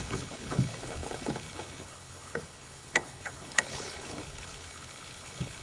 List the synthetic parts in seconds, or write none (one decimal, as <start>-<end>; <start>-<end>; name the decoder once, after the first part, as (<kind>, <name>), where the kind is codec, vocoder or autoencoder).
0.0-5.6 (codec, HILCodec)